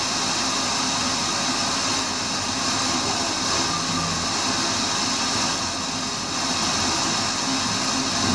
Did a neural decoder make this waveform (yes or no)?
no